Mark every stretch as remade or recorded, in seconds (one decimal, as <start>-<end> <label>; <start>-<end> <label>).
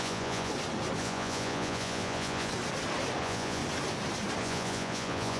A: 0.0-0.5 remade; 0.5-1.0 recorded; 1.0-2.5 remade; 2.5-3.2 recorded; 3.2-3.6 remade; 3.6-4.4 recorded; 4.4-5.4 remade